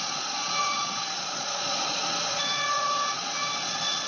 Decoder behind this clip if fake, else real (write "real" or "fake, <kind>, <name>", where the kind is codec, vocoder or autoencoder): fake, vocoder, Vocos